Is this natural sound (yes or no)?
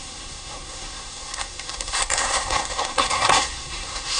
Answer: no